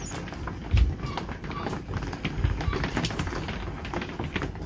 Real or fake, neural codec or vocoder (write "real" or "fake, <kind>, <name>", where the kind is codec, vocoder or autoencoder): real